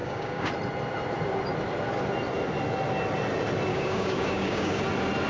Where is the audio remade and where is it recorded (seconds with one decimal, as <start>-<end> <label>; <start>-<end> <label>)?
0.0-0.5 remade; 0.5-3.7 recorded; 3.7-4.8 remade; 4.8-5.3 recorded